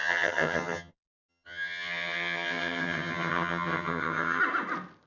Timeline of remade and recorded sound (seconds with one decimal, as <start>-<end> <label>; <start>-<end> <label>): 0.0-0.9 remade; 0.9-1.3 recorded; 1.3-4.4 remade; 4.4-5.1 recorded